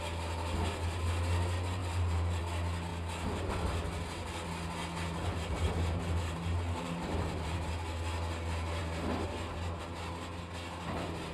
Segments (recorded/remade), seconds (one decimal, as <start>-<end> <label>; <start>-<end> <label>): 0.0-1.8 recorded; 1.8-2.4 remade; 2.4-4.8 recorded; 4.8-7.7 remade; 7.7-11.3 recorded